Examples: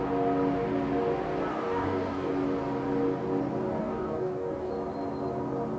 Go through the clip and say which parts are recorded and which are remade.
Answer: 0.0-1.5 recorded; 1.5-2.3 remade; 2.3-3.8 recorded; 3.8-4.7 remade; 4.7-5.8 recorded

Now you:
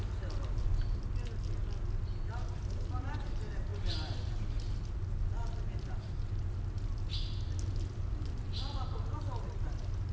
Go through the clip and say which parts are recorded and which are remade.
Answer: 0.0-10.1 recorded